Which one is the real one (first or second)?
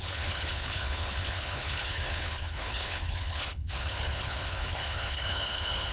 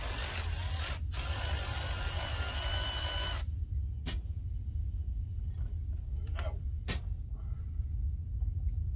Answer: second